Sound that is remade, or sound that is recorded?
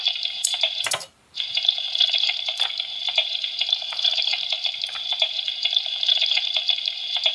remade